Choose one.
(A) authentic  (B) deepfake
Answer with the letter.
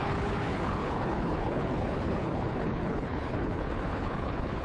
B